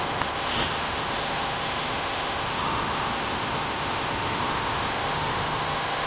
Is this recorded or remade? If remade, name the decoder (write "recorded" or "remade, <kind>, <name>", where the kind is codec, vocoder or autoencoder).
remade, autoencoder, DAC-VAE